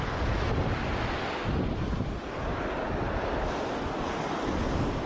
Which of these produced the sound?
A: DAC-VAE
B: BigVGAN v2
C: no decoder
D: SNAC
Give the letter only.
C